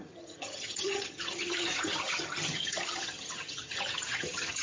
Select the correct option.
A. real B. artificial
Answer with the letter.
B